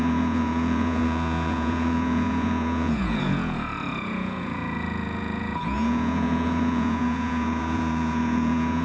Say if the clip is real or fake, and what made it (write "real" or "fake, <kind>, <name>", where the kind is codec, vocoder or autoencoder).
fake, vocoder, Vocos